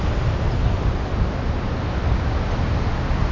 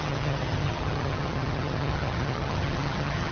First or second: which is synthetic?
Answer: second